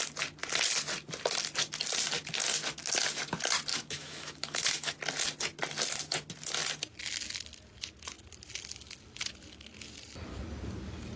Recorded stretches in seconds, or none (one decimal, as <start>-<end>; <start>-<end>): 0.0-3.7; 4.9-11.2